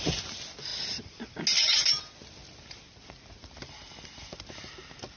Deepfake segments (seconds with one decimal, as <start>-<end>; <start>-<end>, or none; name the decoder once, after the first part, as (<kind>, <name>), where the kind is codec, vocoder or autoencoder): none